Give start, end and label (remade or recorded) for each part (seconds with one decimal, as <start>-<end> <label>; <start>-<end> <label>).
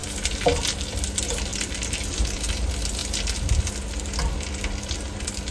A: 0.0-0.6 remade; 0.6-1.5 recorded; 1.5-2.5 remade; 2.5-5.5 recorded